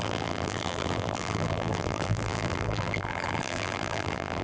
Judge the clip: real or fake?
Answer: fake